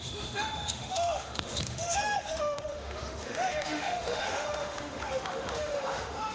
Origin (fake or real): fake